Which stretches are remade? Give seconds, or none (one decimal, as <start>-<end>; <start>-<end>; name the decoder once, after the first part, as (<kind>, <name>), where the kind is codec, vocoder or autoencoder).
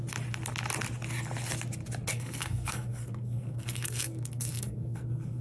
2.1-5.4 (codec, SNAC)